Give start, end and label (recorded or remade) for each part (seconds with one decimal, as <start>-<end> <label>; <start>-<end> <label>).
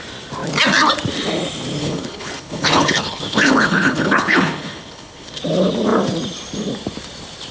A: 0.0-1.8 recorded; 1.8-5.4 remade; 5.4-7.5 recorded